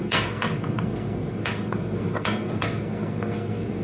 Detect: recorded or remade remade